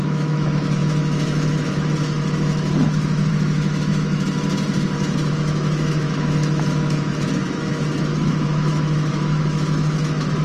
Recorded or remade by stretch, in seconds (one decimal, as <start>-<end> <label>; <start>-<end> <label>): 0.0-4.5 remade; 4.5-5.3 recorded; 5.3-10.4 remade

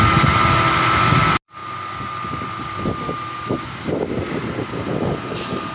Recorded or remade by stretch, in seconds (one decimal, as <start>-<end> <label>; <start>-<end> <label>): 0.0-5.7 recorded

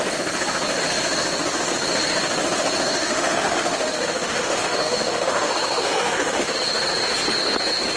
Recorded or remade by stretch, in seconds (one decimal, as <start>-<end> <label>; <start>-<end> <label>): 0.0-3.0 recorded; 3.0-6.6 remade; 6.6-8.0 recorded

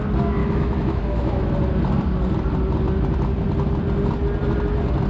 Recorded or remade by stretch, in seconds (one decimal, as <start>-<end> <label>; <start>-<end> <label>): 0.0-0.4 recorded; 0.4-1.5 remade; 1.5-5.1 recorded

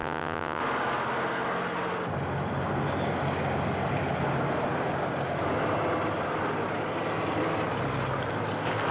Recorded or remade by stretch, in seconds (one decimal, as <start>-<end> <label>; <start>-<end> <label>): 0.0-0.6 remade; 0.6-8.9 recorded

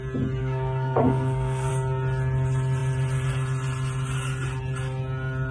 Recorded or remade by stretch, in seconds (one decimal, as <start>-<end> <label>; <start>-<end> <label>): 0.0-0.4 recorded; 0.4-1.7 remade; 1.7-5.5 recorded

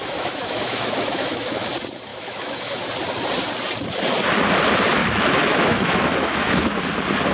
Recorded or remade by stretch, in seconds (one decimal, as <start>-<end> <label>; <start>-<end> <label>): 0.0-1.7 remade; 1.7-2.1 recorded; 2.1-2.8 remade; 2.8-5.0 recorded; 5.0-6.7 remade; 6.7-7.3 recorded